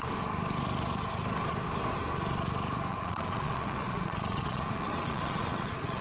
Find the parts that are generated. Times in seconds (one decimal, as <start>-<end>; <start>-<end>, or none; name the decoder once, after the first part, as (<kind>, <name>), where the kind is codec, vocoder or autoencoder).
2.9-6.0 (vocoder, Vocos)